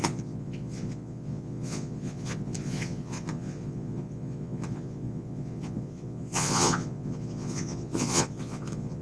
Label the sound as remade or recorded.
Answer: remade